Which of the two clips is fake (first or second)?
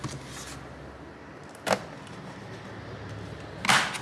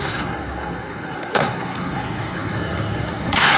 second